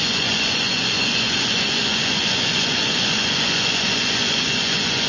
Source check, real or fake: fake